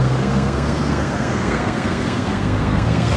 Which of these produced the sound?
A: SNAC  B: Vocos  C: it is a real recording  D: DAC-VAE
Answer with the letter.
A